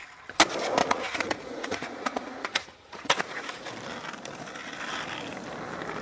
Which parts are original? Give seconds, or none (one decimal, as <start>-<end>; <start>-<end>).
0.0-0.8; 3.7-6.0